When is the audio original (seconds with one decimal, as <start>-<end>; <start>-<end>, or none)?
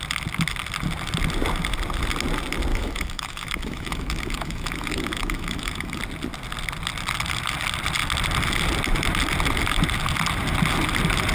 0.0-2.7; 6.0-11.3